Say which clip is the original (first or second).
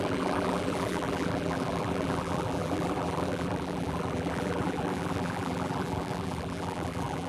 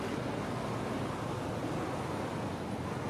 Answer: second